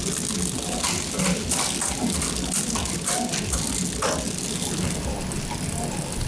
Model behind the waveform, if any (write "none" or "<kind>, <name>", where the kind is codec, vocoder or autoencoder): none